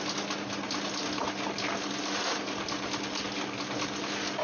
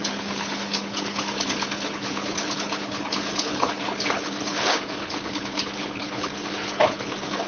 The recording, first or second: first